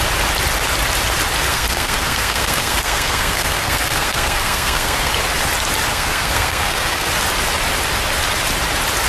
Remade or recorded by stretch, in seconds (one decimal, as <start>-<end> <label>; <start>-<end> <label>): 0.0-1.5 recorded; 1.5-5.1 remade; 5.1-5.9 recorded; 5.9-7.1 remade; 7.1-9.1 recorded